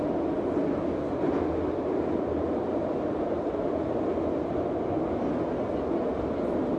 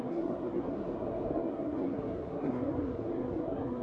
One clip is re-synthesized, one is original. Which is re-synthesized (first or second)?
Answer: second